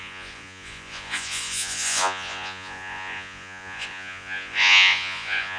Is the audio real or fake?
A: fake